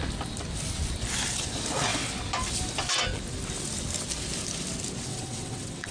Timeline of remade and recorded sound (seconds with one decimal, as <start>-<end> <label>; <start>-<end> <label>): 0.0-5.1 recorded; 5.1-5.9 remade